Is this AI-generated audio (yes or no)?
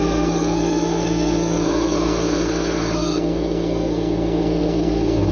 yes